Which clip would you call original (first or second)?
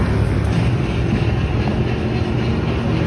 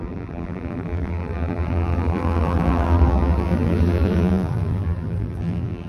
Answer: first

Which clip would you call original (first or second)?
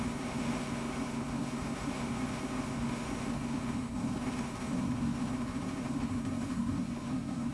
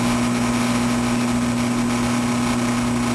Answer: second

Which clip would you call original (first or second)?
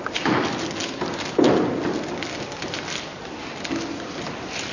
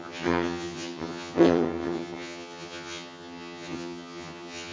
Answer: first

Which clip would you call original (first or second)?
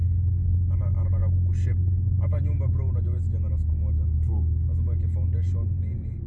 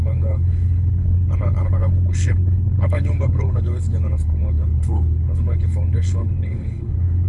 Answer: first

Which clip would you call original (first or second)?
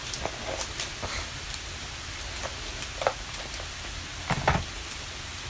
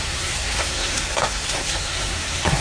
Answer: first